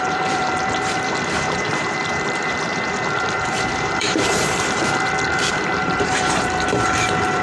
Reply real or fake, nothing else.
fake